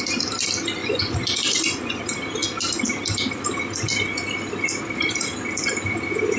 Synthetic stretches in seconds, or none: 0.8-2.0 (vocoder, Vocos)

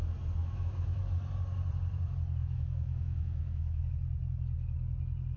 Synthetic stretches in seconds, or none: 0.4-1.0 (autoencoder, DAC-VAE); 2.4-3.8